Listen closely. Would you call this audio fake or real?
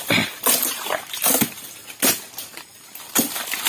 real